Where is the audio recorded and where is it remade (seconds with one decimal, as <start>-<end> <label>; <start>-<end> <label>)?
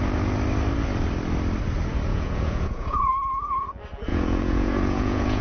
0.0-2.1 recorded; 2.1-3.1 remade; 3.1-4.1 recorded; 4.1-5.4 remade